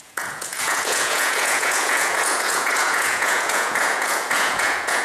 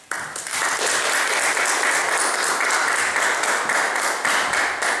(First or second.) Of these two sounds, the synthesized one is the first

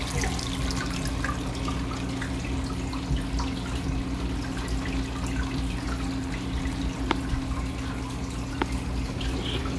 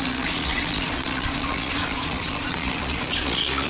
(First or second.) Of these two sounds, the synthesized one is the second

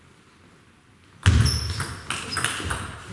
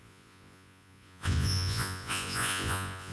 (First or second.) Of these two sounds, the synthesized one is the second